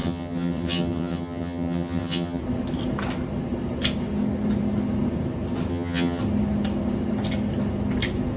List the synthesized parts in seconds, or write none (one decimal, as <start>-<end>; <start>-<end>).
0.0-2.4; 5.7-6.2